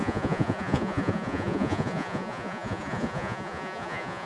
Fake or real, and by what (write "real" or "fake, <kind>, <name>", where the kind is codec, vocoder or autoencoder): fake, vocoder, Vocos